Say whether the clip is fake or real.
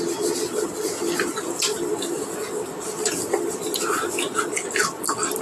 real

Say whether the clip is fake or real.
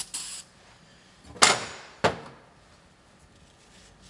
real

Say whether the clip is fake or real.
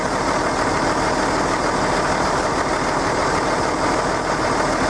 real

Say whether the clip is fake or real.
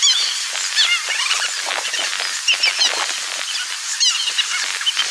real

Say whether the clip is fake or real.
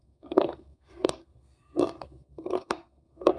fake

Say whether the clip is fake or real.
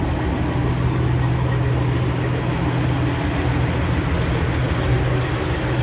real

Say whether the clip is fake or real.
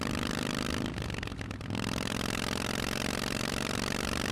fake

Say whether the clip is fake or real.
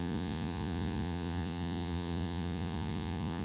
fake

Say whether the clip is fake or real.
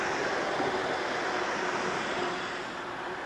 real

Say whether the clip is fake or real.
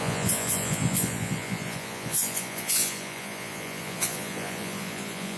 fake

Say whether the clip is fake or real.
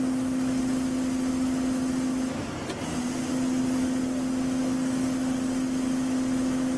real